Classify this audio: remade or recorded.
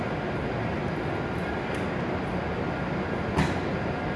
recorded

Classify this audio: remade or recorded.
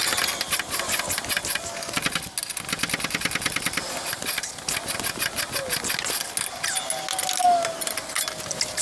recorded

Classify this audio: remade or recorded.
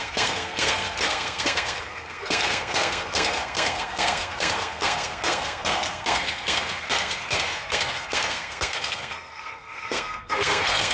remade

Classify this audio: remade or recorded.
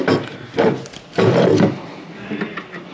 recorded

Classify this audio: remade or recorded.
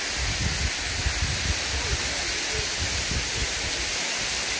recorded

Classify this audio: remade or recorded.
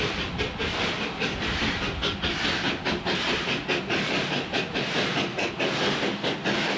recorded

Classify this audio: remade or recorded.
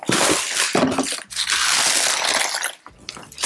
recorded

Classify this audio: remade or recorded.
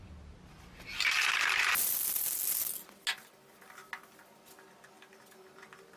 recorded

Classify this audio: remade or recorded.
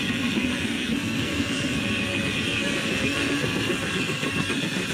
remade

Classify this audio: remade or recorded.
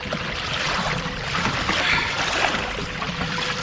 recorded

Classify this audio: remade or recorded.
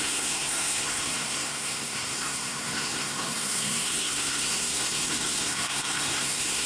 remade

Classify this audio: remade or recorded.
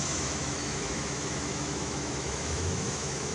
remade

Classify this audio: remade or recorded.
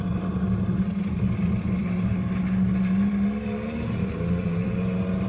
recorded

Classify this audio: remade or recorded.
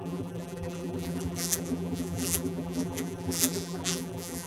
remade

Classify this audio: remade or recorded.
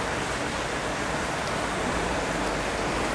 recorded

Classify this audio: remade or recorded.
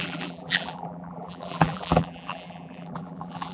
remade